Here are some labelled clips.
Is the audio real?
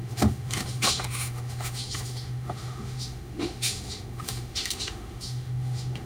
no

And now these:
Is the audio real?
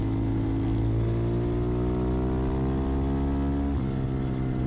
yes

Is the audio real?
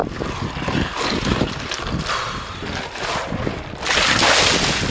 yes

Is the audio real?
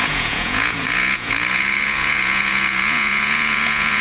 no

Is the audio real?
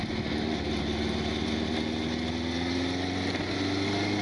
yes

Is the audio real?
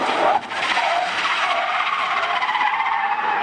yes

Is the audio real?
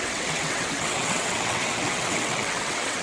no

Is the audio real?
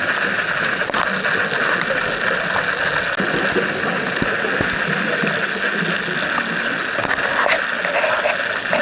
yes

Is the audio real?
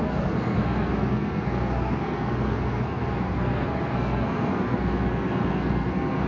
no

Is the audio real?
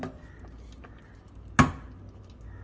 yes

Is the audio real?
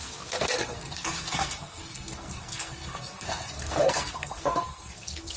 no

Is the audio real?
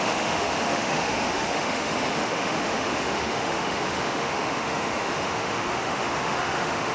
no